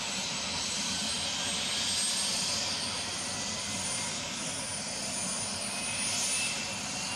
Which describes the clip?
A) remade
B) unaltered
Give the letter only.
B